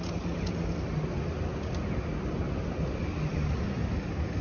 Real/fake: real